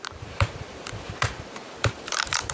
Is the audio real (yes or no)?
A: no